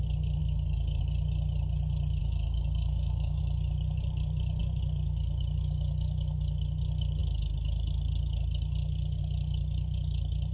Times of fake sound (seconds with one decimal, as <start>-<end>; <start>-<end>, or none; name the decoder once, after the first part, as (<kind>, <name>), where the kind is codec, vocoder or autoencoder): 0.4-1.0 (codec, DAC); 2.2-3.4